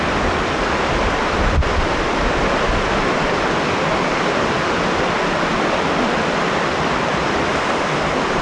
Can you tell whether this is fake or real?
fake